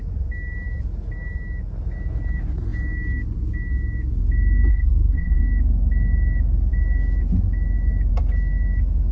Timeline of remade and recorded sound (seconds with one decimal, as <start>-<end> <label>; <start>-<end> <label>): 0.0-4.7 recorded; 4.7-5.4 remade; 5.4-9.1 recorded